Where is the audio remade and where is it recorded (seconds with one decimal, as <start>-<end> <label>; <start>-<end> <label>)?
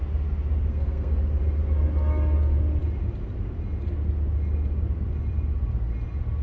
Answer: 0.0-0.7 recorded; 0.7-1.2 remade; 1.2-6.4 recorded